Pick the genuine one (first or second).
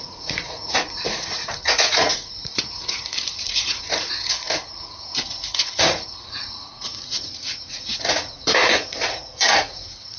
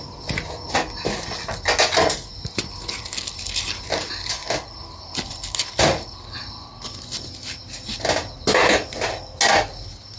second